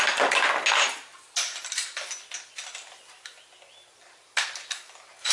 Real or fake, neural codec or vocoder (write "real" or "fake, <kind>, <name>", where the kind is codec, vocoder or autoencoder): real